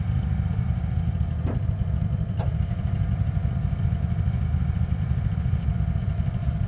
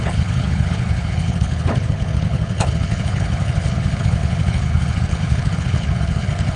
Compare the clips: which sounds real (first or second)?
first